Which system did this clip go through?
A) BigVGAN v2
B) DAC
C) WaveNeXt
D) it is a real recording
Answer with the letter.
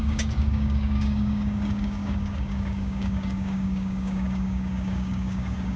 B